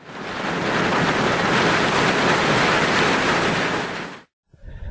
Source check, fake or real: real